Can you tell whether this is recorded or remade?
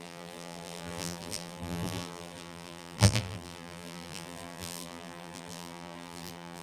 remade